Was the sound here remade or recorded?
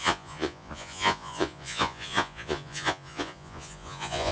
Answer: remade